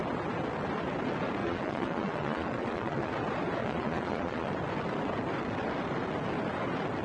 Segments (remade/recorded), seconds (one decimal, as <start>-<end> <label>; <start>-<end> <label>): 0.0-1.4 recorded; 1.4-3.1 remade; 3.1-3.6 recorded; 3.6-4.5 remade; 4.5-7.0 recorded